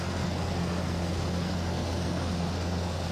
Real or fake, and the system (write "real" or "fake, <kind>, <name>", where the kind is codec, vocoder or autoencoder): fake, codec, SNAC